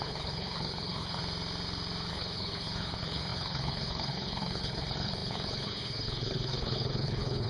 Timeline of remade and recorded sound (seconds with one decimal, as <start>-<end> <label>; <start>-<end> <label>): 0.0-1.2 remade; 1.2-2.1 recorded; 2.1-7.5 remade